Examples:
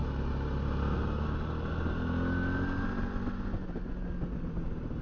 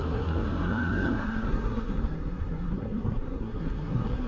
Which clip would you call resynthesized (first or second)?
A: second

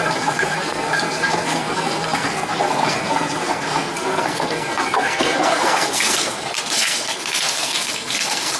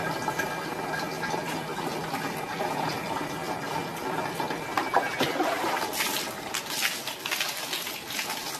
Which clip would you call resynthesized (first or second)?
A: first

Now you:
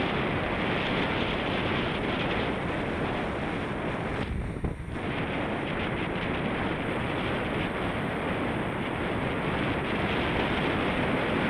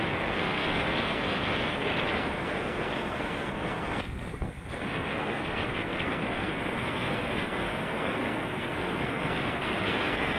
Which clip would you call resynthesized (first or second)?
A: second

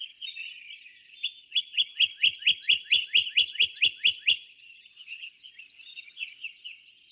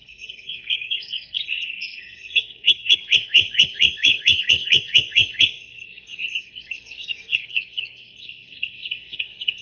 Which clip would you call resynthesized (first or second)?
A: second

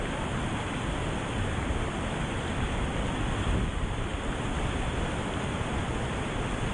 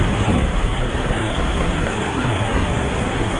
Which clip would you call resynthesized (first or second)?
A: second